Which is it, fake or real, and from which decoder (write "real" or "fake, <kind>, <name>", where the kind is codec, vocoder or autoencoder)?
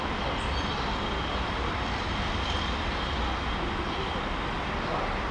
real